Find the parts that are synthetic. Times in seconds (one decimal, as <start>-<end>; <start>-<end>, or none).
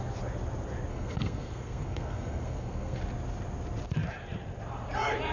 0.9-3.0